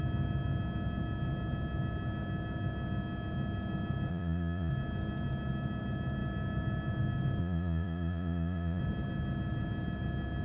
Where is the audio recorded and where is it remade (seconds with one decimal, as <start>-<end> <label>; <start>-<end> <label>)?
0.0-4.1 recorded; 4.1-4.7 remade; 4.7-7.4 recorded; 7.4-8.8 remade; 8.8-10.4 recorded